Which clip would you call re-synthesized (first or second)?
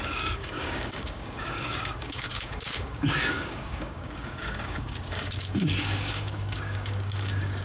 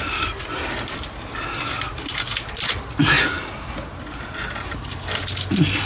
first